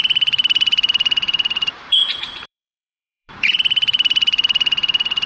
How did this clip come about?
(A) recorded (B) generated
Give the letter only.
B